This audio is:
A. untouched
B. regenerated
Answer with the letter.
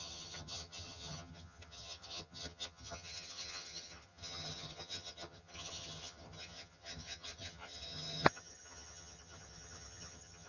B